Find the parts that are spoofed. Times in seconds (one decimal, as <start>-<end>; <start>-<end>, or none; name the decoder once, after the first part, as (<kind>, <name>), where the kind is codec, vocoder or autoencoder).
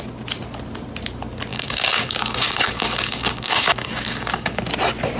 1.5-4.6 (codec, DAC)